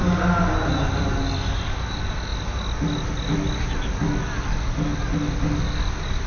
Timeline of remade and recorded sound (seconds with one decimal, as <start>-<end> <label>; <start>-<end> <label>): 0.0-6.3 recorded